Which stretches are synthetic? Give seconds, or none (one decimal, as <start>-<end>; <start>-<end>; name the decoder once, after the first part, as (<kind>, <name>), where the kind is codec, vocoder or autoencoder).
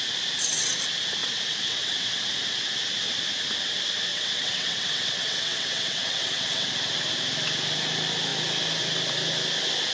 1.2-2.2 (vocoder, WaveNeXt); 4.1-6.7